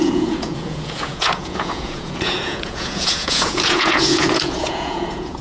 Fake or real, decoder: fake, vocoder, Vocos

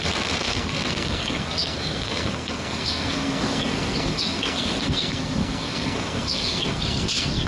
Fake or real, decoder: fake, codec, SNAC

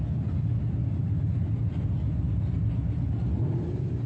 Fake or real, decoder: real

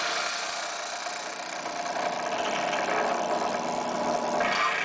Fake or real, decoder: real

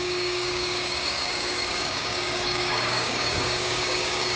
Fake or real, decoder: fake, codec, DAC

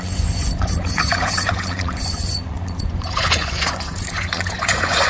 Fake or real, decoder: fake, vocoder, Vocos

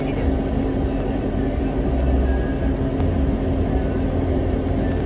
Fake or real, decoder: real